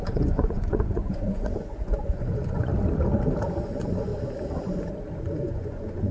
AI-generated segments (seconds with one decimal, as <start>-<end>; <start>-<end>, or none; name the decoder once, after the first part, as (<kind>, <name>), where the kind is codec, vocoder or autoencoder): 0.0-2.7 (vocoder, Vocos); 3.6-4.1; 5.2-6.1